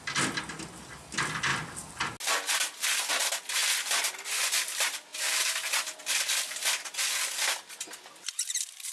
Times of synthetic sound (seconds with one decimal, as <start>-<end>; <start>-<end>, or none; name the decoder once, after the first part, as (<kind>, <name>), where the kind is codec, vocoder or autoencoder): none

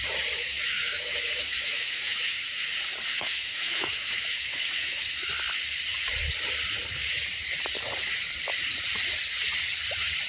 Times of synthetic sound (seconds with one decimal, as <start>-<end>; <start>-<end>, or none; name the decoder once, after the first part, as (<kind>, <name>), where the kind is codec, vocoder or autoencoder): 0.4-2.7 (autoencoder, DAC-VAE); 3.1-5.3

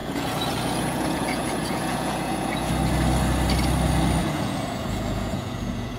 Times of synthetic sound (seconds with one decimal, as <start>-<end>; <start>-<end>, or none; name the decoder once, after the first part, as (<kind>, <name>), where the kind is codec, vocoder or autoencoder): 0.0-2.7 (vocoder, Vocos); 4.2-6.0

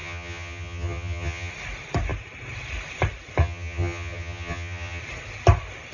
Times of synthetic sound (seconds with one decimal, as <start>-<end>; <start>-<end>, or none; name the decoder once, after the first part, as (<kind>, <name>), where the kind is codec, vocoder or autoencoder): 0.0-1.5 (vocoder, HiFi-GAN); 3.4-5.0

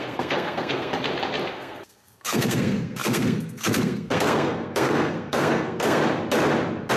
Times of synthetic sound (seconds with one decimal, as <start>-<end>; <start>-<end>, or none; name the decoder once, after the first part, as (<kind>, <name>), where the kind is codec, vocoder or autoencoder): 0.0-0.9 (codec, SNAC); 1.5-6.0

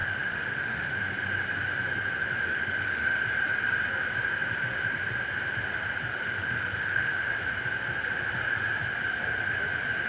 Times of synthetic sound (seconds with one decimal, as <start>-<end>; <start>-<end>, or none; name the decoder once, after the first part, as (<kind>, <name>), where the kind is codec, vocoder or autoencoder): 0.0-1.0 (autoencoder, DAC-VAE); 2.4-3.2; 6.2-7.3

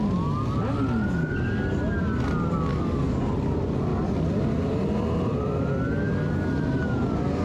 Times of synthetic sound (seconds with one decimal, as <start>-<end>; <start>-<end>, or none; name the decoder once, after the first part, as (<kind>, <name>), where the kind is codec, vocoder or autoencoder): 2.7-3.3 (codec, DAC)